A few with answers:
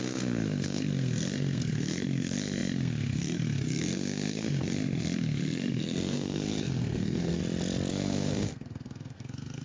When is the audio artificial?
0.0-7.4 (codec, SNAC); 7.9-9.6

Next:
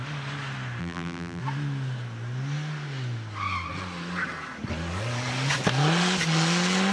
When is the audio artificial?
0.8-1.4 (vocoder, BigVGAN v2)